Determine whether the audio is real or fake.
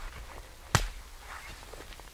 real